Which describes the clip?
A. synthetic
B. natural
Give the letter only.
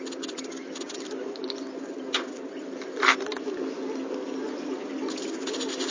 B